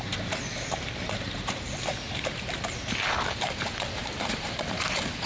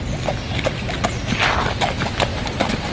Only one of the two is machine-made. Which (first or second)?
first